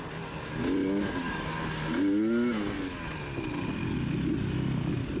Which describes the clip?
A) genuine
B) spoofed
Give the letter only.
A